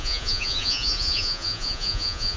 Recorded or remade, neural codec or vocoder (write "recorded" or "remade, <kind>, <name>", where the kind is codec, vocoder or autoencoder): remade, vocoder, Vocos